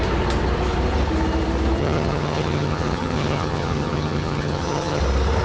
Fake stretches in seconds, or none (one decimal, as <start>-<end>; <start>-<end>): 1.8-5.0